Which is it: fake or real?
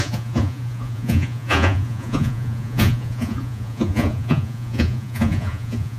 fake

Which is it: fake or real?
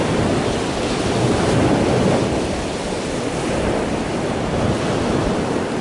real